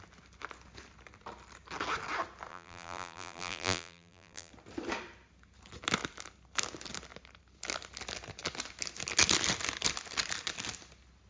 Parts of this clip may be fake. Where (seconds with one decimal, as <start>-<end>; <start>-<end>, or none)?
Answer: 2.5-4.5

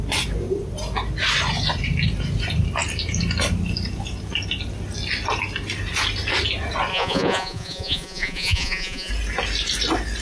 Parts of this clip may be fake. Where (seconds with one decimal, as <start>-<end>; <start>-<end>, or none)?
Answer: 6.9-9.1